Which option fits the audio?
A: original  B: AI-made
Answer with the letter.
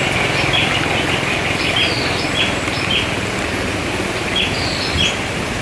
A